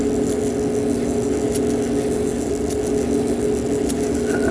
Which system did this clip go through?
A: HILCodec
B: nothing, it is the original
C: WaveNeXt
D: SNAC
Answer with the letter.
B